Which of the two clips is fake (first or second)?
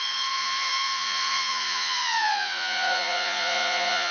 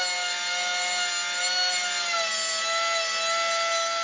first